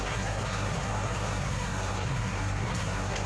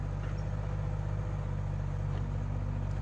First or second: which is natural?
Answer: second